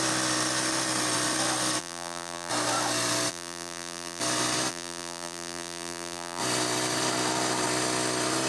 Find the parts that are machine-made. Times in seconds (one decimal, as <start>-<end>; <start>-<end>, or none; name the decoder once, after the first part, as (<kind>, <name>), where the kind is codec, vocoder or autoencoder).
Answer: 1.8-2.5 (vocoder, BigVGAN v2); 3.3-4.2; 4.7-6.4